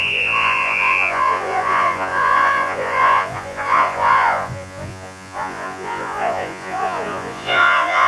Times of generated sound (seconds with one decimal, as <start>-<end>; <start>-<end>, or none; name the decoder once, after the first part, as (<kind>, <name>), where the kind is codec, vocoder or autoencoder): 0.0-8.1 (vocoder, Vocos)